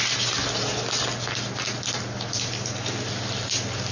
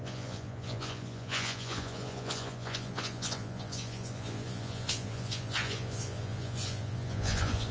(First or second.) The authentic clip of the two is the first